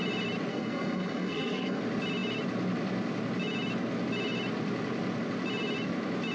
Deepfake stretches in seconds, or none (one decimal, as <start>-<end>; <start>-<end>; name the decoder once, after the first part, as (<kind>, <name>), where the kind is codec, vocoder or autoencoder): 0.5-1.8 (codec, SNAC)